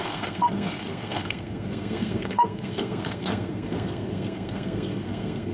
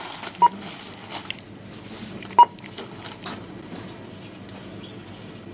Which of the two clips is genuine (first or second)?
second